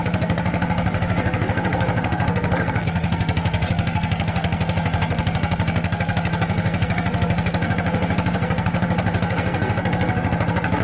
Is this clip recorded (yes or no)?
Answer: no